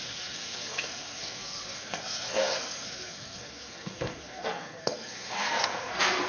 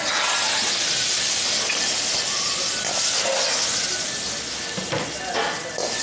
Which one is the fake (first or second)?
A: first